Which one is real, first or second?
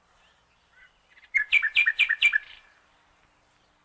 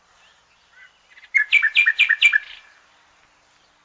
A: second